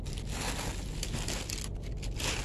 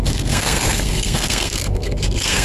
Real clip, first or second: first